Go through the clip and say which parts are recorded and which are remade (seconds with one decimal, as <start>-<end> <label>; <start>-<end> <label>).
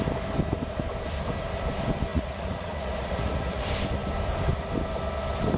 0.0-2.1 recorded; 2.1-3.6 remade; 3.6-5.6 recorded